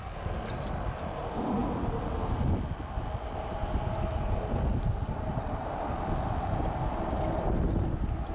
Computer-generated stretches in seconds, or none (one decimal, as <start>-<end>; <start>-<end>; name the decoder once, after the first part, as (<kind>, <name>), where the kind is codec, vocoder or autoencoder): none